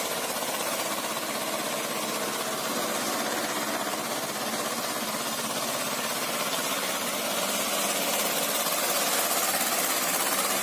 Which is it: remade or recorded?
recorded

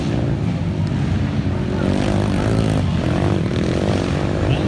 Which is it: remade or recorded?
recorded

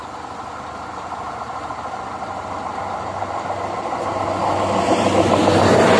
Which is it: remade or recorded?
recorded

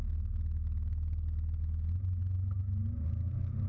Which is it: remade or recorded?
recorded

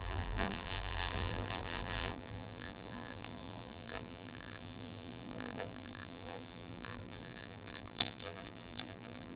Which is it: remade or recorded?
remade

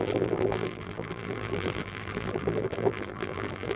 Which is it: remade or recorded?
remade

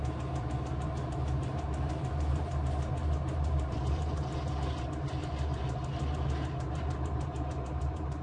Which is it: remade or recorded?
remade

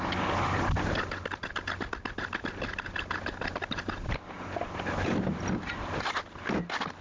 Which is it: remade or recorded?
recorded